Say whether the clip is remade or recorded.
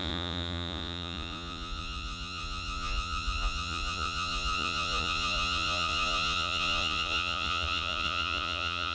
remade